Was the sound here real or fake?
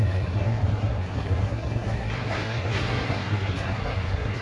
fake